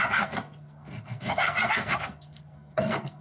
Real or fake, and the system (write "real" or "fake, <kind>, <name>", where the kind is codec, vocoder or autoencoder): fake, codec, SNAC